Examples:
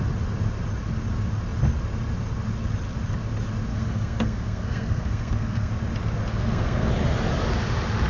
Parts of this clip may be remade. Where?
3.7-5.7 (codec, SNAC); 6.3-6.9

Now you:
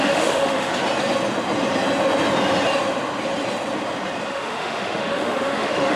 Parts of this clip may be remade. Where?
0.0-0.7 (autoencoder, DAC-VAE); 4.3-6.0

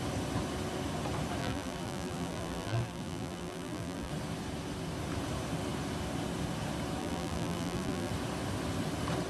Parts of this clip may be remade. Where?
1.4-4.1 (vocoder, BigVGAN v2); 7.0-8.1

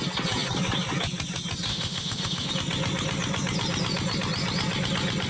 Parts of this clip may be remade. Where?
1.7-2.5 (autoencoder, DAC-VAE)

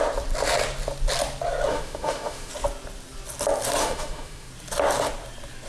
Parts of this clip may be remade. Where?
1.7-2.5 (autoencoder, DAC-VAE); 3.8-4.5